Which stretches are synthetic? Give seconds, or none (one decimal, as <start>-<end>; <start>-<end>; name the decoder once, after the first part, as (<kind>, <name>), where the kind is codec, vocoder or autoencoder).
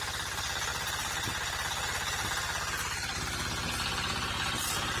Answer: none